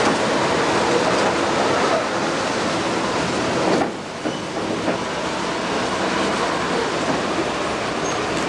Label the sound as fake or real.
real